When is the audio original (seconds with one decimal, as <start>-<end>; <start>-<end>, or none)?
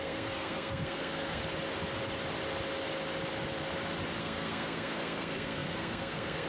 1.4-4.2